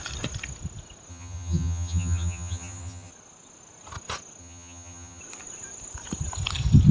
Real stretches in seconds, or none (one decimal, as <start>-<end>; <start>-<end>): 0.0-1.1; 3.1-4.4; 5.2-6.9